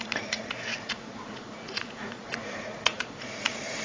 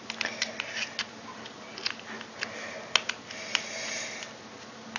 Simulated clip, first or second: first